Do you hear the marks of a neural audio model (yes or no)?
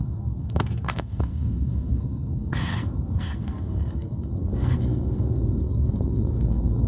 yes